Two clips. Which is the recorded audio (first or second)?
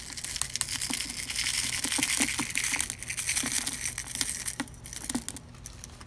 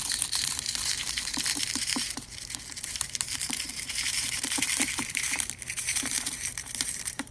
first